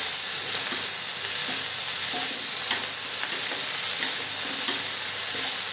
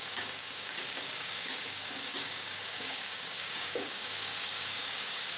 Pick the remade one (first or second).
second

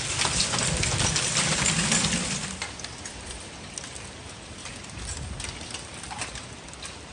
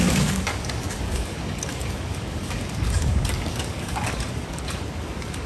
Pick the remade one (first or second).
second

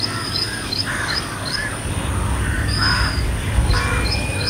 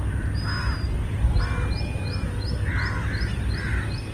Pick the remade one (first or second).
first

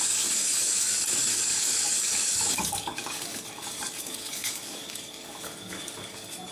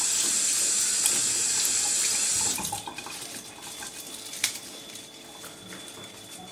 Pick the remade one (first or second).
first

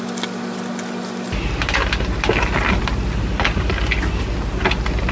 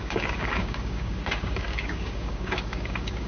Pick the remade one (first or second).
second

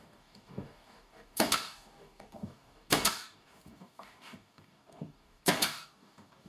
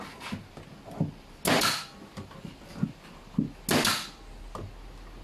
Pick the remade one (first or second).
first